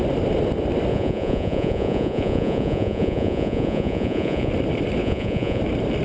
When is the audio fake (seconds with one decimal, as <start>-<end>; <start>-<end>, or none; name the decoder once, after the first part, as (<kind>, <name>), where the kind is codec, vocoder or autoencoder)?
0.9-4.5 (vocoder, Vocos); 5.0-5.6